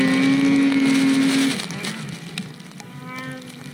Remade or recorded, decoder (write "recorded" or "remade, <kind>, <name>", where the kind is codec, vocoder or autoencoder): recorded